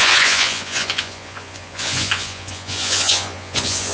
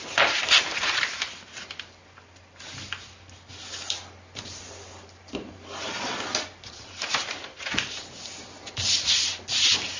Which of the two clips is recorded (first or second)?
second